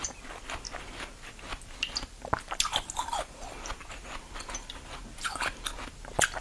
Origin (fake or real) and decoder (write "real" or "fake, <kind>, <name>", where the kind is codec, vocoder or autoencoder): real